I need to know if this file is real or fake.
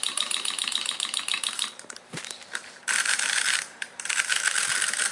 fake